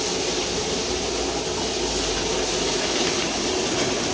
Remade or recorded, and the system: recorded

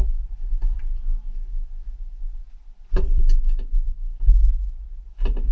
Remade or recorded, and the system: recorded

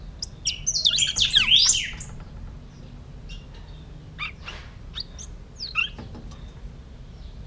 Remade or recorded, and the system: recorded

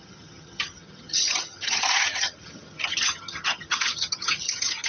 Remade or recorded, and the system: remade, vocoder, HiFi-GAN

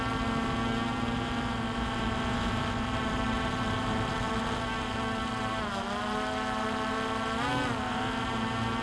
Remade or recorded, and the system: recorded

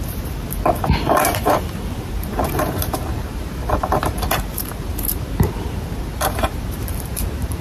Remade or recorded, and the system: remade, vocoder, BigVGAN v2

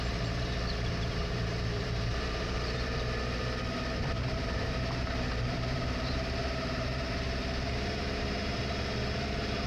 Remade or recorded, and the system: remade, vocoder, BigVGAN v2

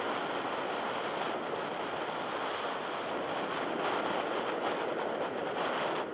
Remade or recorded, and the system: recorded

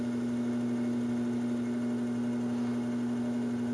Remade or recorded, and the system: recorded